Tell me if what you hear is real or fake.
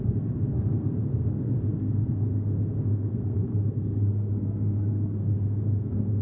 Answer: fake